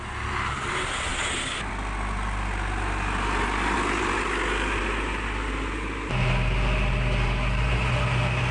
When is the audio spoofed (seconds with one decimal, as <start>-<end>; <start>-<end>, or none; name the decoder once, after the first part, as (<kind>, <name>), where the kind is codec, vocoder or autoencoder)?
none